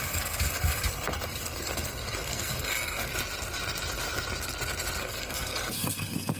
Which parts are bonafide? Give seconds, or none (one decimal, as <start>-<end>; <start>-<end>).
3.1-5.0